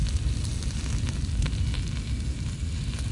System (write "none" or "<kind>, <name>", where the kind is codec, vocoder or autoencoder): none